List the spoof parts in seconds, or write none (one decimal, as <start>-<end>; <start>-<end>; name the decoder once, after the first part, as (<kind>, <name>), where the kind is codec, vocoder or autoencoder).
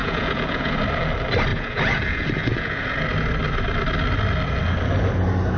0.0-0.7 (vocoder, Vocos); 1.5-3.0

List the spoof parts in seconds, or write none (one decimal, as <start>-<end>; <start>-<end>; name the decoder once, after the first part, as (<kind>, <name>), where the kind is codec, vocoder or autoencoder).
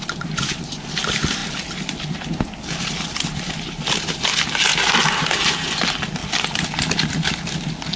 none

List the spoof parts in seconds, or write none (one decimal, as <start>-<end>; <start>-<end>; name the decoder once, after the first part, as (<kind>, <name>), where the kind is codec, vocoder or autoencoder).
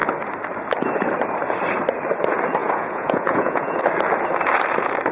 2.6-3.8 (vocoder, Vocos)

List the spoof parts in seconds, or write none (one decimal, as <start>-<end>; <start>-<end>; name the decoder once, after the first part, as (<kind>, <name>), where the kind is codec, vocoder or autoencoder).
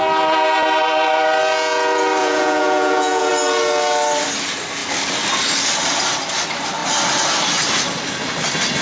2.2-3.3 (vocoder, Vocos)